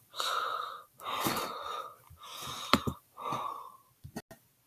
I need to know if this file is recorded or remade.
recorded